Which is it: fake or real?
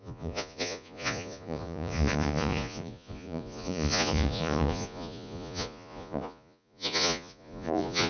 fake